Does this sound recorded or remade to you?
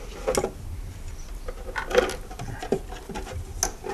recorded